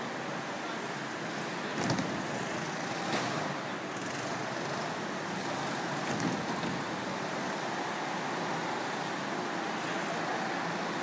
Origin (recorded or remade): recorded